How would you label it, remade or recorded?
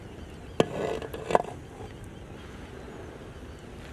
recorded